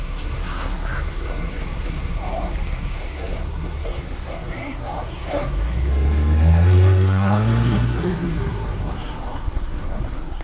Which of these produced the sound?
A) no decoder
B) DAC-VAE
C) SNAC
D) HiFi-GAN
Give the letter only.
C